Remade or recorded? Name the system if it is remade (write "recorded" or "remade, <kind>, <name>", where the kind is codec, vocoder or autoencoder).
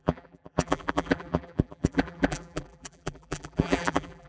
remade, vocoder, BigVGAN v2